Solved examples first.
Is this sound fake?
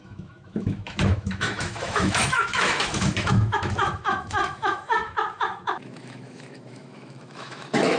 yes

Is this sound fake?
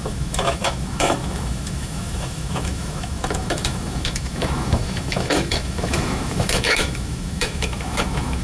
yes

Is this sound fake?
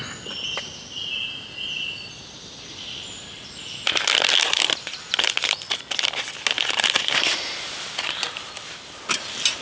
no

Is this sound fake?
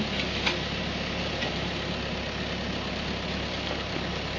no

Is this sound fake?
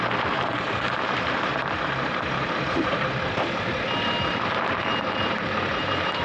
yes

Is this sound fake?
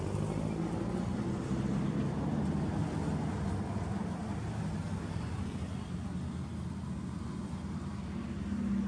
no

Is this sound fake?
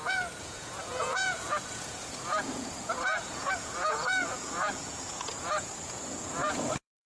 yes